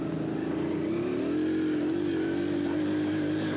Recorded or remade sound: recorded